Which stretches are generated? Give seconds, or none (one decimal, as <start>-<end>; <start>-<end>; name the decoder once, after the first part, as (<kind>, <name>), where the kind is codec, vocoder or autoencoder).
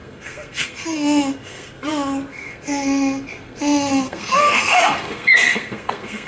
0.0-1.9 (codec, SNAC); 2.3-6.3